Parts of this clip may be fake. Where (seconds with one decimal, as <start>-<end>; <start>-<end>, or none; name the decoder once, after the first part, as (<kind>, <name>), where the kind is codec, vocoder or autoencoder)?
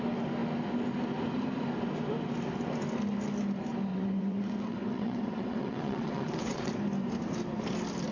3.9-6.7 (vocoder, WaveNeXt)